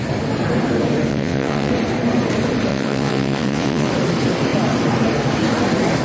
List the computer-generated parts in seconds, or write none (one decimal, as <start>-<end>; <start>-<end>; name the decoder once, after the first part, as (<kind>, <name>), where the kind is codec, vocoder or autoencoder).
1.1-1.7 (vocoder, WaveNeXt); 2.7-3.9